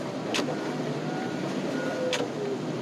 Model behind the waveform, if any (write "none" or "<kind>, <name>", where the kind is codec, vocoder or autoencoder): none